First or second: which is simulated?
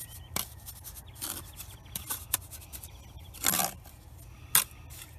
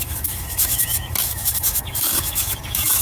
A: second